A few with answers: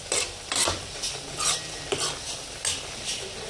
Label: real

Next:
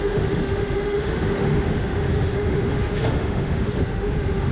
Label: fake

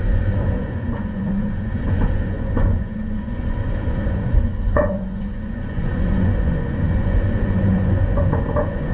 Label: fake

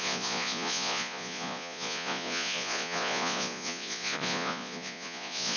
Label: fake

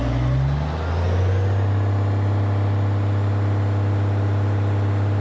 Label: real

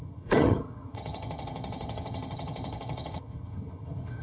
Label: fake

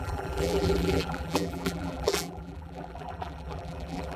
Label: fake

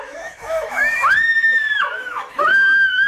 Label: fake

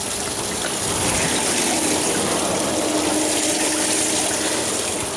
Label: real